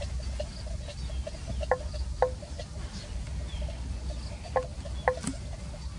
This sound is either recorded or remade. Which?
recorded